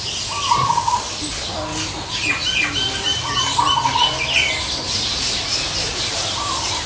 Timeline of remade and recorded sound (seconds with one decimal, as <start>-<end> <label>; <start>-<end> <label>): 0.0-6.9 recorded